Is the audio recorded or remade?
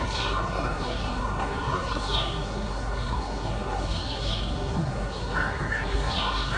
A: remade